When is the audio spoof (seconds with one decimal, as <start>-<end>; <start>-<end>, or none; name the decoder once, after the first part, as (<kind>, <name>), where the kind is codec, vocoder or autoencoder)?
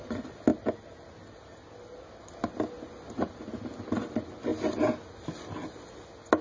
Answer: none